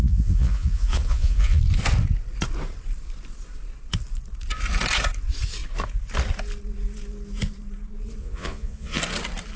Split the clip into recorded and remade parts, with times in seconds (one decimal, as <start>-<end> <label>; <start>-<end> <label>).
0.0-1.6 remade; 1.6-8.2 recorded; 8.2-9.0 remade; 9.0-9.6 recorded